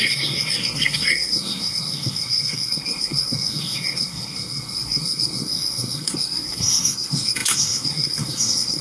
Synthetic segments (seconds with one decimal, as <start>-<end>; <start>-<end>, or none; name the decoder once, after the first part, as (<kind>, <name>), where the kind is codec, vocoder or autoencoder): 0.0-8.8 (codec, SNAC)